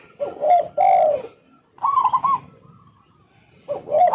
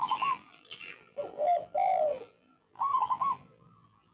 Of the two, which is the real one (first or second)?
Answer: first